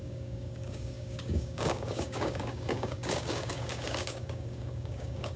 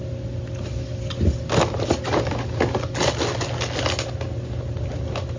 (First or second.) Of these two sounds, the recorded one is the second